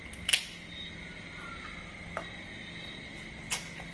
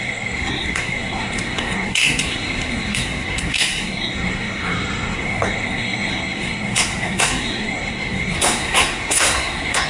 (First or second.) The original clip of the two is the first